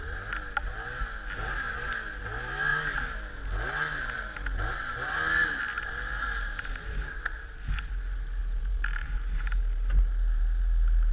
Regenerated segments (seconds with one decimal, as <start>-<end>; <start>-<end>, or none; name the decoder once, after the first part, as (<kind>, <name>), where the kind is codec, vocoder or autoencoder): 8.4-9.6 (vocoder, BigVGAN v2)